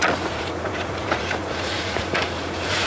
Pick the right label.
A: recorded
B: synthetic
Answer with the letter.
B